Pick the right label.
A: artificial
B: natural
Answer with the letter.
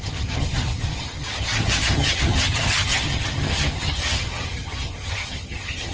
A